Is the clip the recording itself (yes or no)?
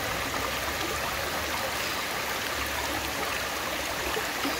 yes